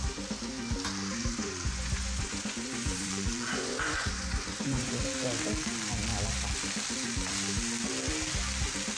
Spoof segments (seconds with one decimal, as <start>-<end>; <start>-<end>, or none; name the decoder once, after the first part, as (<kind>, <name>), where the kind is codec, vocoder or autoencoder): 1.2-4.9 (vocoder, Vocos)